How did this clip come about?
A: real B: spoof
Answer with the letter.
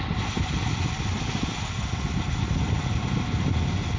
A